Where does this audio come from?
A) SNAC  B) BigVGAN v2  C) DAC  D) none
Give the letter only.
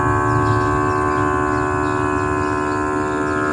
D